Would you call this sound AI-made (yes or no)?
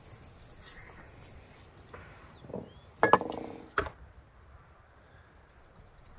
no